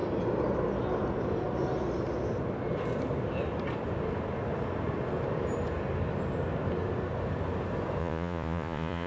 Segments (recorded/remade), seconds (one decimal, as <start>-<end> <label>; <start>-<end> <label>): 0.0-8.0 recorded; 8.0-9.1 remade